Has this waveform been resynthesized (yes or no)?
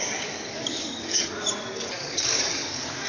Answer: yes